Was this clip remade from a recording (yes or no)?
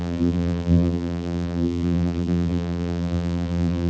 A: yes